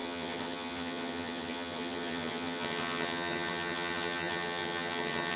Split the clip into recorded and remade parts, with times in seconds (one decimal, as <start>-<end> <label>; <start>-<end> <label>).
0.0-5.4 remade